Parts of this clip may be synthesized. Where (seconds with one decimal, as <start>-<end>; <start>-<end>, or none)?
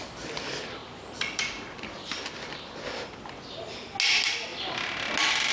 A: 0.8-2.2